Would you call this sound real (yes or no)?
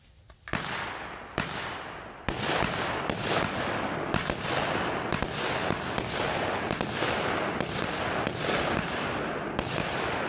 yes